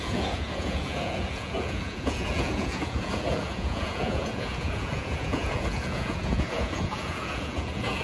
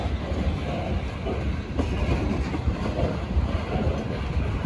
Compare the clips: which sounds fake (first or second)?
first